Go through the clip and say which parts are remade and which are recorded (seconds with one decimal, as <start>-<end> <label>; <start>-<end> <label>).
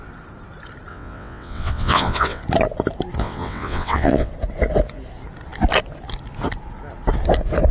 0.0-0.9 recorded; 0.9-2.4 remade; 2.4-3.2 recorded; 3.2-4.3 remade; 4.3-7.7 recorded